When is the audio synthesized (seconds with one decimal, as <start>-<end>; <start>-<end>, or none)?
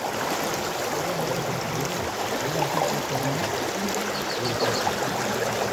none